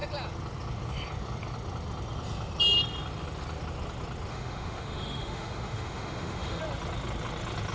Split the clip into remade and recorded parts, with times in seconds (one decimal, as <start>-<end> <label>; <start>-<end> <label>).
0.0-4.3 recorded; 4.3-6.6 remade; 6.6-7.7 recorded